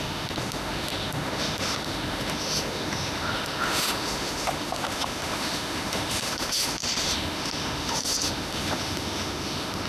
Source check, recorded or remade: remade